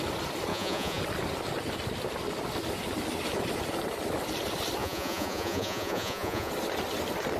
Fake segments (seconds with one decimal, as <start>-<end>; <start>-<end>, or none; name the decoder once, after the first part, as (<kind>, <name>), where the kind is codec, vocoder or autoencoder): 0.5-1.0 (vocoder, Vocos); 4.8-6.5